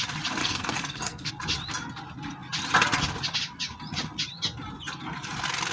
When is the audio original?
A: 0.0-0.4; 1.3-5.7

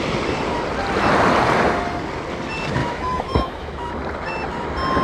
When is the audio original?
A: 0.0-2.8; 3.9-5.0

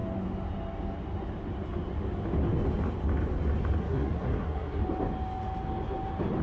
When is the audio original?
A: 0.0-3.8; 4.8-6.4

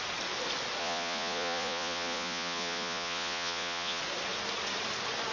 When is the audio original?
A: 0.0-0.8; 4.0-5.3

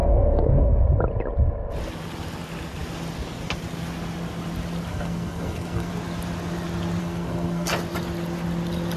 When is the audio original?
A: 0.8-4.9; 5.9-7.0; 7.7-9.0